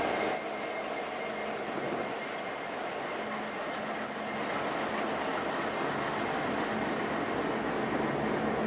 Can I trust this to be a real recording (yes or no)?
yes